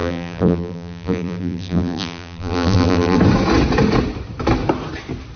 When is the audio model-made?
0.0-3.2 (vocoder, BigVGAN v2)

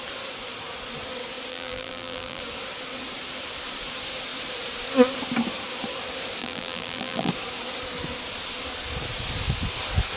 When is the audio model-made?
1.5-2.4 (vocoder, BigVGAN v2); 6.4-7.3

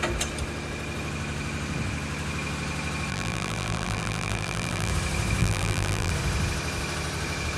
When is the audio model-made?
3.1-4.9 (vocoder, BigVGAN v2); 5.4-6.1

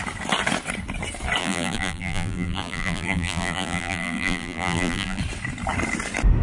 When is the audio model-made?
1.4-5.2 (vocoder, BigVGAN v2)

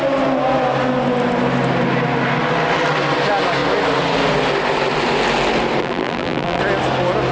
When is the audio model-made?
5.8-6.6 (vocoder, BigVGAN v2)